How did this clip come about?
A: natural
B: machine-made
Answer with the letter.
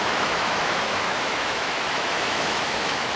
B